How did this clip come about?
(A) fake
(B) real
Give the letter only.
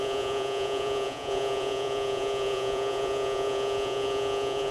A